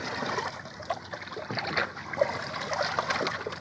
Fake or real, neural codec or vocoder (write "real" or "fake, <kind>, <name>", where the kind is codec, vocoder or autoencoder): real